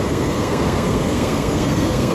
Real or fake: fake